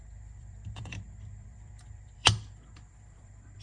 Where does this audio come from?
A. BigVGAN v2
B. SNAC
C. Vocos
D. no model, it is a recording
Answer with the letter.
A